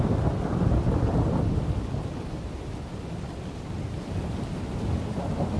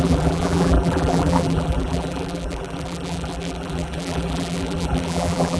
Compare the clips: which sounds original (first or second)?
first